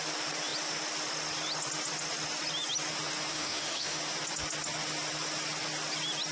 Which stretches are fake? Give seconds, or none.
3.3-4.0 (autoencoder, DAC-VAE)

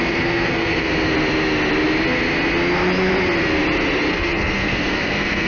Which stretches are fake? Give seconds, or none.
0.0-0.9 (codec, SNAC); 4.1-5.5